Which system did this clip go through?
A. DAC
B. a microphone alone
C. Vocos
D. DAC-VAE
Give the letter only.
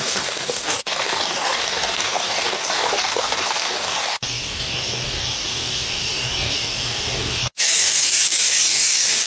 A